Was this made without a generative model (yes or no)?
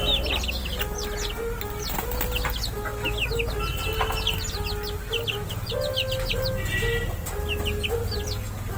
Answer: yes